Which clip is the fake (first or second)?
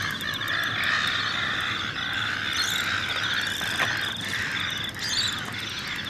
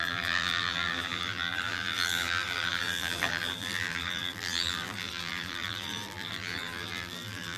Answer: second